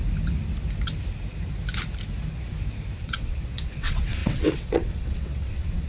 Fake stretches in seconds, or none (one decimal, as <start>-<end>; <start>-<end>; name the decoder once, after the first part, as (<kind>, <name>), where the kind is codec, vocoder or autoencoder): 3.0-5.9 (vocoder, WaveNeXt)

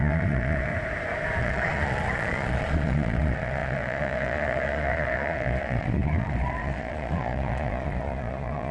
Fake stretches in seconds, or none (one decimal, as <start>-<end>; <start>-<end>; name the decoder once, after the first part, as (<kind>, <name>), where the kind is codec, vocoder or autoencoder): 0.0-0.7 (vocoder, Vocos); 1.4-8.7

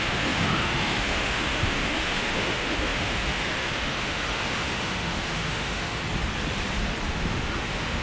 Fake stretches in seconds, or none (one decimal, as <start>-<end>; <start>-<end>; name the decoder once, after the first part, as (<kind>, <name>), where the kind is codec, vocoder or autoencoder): 0.0-6.0 (autoencoder, DAC-VAE); 7.1-8.0

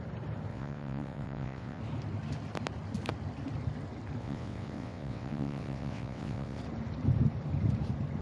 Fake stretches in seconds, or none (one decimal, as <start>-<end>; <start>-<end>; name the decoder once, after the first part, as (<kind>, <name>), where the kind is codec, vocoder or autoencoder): 0.5-1.8 (vocoder, WaveNeXt); 4.2-6.6

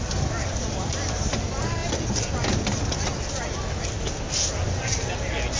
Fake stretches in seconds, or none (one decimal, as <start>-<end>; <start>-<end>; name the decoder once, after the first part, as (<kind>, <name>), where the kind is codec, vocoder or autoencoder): none